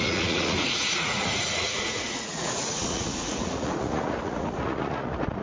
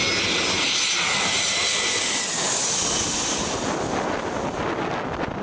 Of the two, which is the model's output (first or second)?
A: first